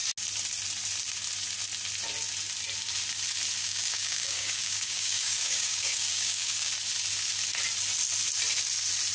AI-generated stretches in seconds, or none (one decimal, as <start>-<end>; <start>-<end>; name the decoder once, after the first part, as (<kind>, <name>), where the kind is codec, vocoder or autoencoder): 3.6-6.7 (codec, DAC)